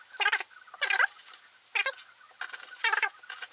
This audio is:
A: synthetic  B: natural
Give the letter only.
B